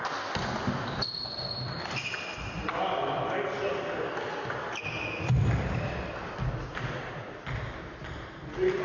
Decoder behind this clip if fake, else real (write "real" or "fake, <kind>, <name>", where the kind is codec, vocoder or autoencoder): real